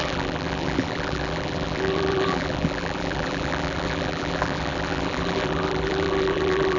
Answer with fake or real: fake